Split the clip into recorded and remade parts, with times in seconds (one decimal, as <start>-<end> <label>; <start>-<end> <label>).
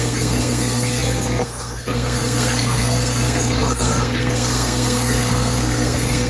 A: 0.0-6.3 remade